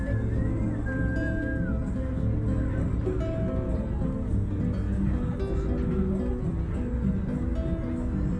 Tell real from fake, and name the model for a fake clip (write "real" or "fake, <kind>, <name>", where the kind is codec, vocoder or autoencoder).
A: real